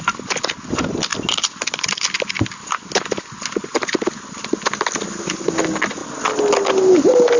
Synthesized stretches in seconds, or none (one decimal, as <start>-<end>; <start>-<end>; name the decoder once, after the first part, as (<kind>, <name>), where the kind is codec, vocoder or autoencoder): none